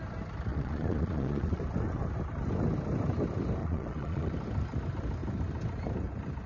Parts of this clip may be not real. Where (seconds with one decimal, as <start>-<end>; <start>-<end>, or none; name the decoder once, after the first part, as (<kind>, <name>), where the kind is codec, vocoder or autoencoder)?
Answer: 0.5-1.6 (vocoder, Vocos); 3.6-4.3